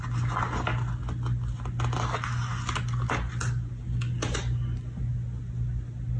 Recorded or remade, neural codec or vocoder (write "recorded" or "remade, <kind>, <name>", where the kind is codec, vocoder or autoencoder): recorded